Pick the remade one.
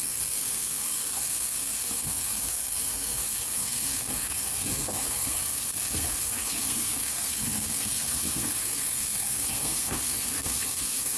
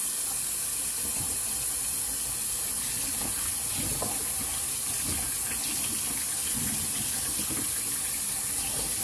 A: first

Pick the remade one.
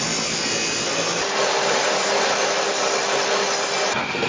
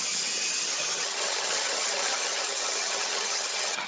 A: second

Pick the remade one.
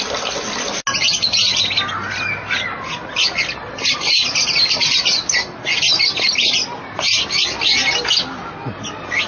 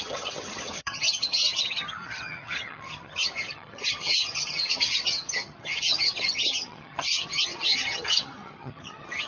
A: second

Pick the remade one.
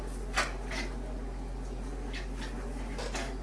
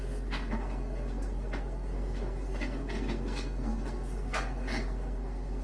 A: second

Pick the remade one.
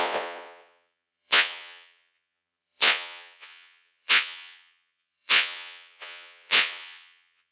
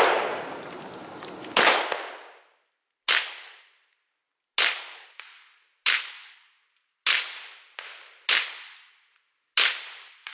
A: first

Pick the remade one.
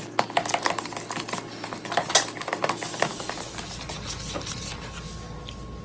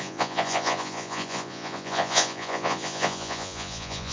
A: second